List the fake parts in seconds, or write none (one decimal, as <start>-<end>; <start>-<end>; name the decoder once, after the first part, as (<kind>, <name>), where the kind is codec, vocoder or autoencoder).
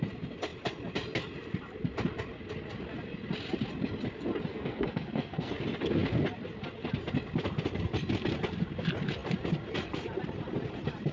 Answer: 4.5-5.5 (codec, SNAC)